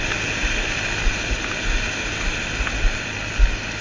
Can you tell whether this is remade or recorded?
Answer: recorded